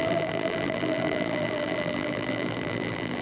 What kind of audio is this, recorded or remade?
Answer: remade